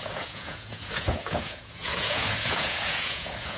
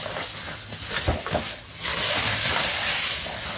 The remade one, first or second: first